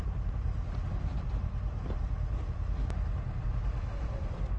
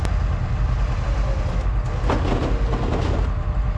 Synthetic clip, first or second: first